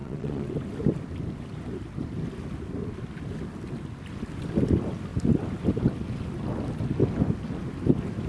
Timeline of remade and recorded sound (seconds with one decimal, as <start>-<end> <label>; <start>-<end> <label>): 0.0-0.5 remade; 0.5-8.3 recorded